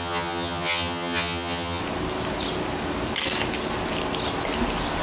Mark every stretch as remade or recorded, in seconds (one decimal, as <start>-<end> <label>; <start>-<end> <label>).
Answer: 0.0-1.8 remade; 1.8-5.0 recorded